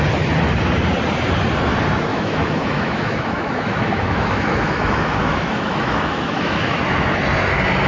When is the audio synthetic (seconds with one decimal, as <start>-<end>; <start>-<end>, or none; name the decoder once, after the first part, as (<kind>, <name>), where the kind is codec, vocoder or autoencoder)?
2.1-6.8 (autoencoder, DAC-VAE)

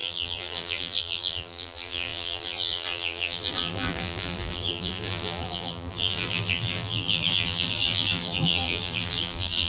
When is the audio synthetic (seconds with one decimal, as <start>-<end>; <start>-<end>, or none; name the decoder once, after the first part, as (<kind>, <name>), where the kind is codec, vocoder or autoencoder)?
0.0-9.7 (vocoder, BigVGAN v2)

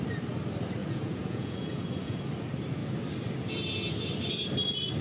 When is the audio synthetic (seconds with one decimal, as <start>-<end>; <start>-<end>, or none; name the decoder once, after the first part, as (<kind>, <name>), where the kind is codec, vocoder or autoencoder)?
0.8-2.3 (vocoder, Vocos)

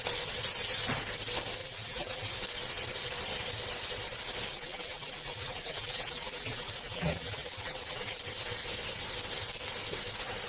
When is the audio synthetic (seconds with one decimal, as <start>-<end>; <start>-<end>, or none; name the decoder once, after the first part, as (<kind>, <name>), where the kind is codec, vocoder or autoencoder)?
1.6-2.3 (vocoder, BigVGAN v2); 4.5-8.2

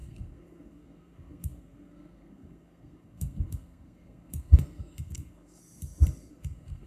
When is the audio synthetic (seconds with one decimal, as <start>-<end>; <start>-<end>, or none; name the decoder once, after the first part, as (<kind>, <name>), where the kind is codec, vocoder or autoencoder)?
0.0-5.6 (codec, SNAC); 6.3-6.9